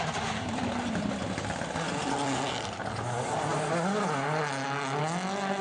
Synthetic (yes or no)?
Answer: no